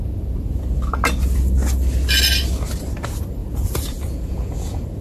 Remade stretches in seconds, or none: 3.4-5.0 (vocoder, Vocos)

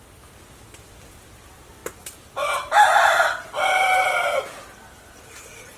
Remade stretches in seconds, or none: none

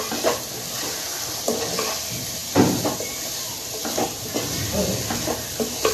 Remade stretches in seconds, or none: none

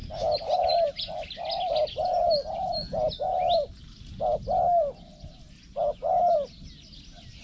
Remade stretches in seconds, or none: none

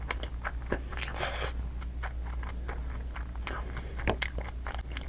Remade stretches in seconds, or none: none

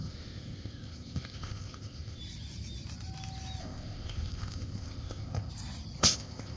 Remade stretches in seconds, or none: 0.0-2.2 (codec, ZipCodec); 3.6-5.5; 6.0-6.6